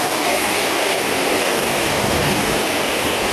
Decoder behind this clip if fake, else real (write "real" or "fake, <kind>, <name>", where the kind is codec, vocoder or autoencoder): fake, codec, DAC